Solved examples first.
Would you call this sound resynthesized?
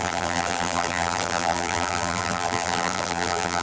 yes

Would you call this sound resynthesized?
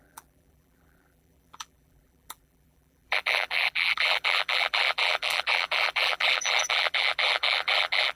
yes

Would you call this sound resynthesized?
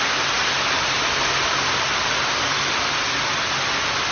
no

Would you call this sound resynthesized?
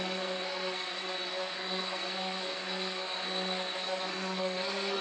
yes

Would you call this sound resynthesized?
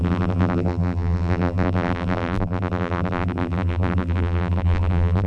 yes